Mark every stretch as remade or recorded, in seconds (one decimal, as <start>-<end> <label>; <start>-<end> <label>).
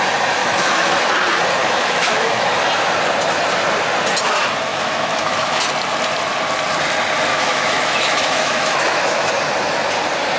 0.0-0.4 recorded; 0.4-1.1 remade; 1.1-1.6 recorded; 1.6-2.5 remade; 2.5-4.7 recorded; 4.7-5.6 remade; 5.6-7.3 recorded; 7.3-9.3 remade; 9.3-10.4 recorded